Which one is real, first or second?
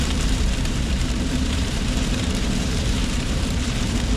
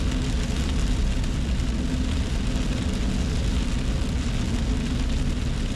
second